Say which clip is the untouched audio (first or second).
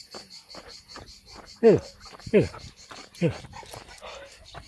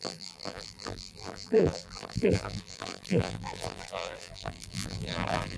first